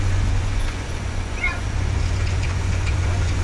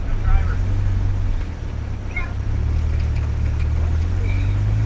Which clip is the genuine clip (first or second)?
second